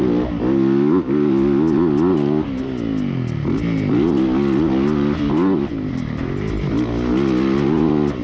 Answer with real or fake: real